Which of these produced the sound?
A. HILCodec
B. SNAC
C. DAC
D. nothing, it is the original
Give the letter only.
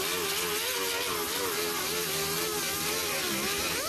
D